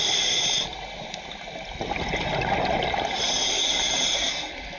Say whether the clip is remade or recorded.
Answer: recorded